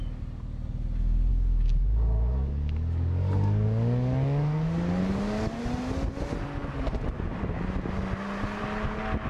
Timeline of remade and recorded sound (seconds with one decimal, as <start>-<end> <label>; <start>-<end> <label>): 0.0-1.3 recorded; 1.3-5.6 remade; 5.6-9.3 recorded

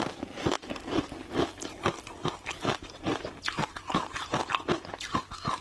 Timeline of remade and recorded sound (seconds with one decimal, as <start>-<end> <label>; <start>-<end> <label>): 0.0-5.6 recorded

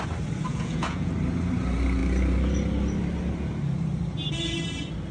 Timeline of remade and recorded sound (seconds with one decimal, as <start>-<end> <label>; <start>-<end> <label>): 0.0-0.5 recorded; 0.5-1.1 remade; 1.1-5.1 recorded

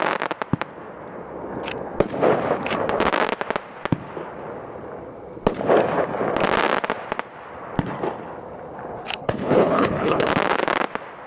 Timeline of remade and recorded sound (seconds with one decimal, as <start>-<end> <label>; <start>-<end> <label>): 0.0-8.9 recorded; 8.9-10.3 remade; 10.3-11.3 recorded

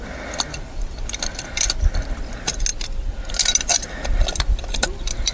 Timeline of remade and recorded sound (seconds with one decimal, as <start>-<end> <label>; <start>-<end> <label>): 0.0-5.3 recorded

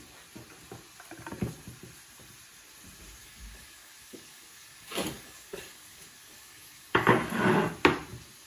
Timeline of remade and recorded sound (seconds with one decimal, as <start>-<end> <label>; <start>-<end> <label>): 0.0-3.2 recorded; 3.2-7.5 remade; 7.5-8.5 recorded

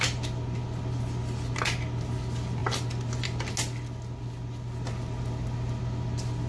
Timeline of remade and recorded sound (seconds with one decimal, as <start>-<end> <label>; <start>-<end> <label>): 0.0-6.5 recorded